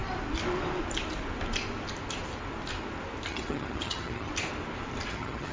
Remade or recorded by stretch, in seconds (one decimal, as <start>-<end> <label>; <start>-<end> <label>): 0.0-3.3 recorded; 3.3-4.3 remade; 4.3-5.1 recorded; 5.1-5.5 remade